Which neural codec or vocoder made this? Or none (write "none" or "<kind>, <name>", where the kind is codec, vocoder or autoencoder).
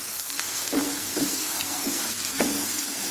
codec, SNAC